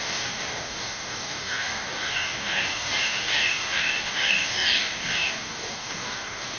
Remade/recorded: remade